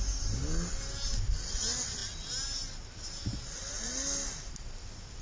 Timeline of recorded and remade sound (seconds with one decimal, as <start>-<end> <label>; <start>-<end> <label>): 0.0-5.2 recorded